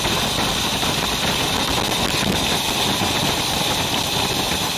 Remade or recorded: recorded